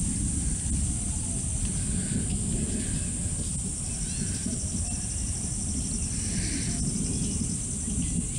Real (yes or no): yes